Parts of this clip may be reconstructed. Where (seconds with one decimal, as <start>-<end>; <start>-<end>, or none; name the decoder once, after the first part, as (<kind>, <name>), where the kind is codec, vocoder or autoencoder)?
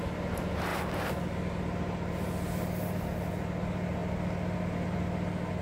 none